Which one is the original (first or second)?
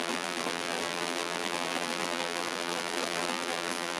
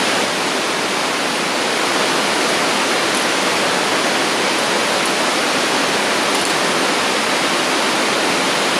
second